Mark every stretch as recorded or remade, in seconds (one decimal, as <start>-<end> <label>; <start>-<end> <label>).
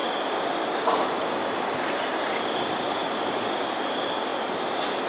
0.0-5.1 recorded